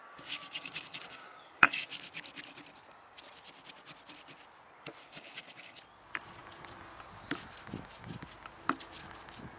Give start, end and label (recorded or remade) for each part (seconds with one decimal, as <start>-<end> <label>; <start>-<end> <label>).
0.0-1.9 remade; 1.9-5.0 recorded; 5.0-5.8 remade; 5.8-9.6 recorded